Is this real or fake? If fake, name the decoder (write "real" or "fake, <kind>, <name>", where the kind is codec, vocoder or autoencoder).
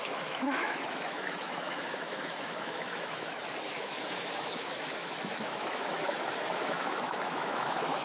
fake, autoencoder, DAC-VAE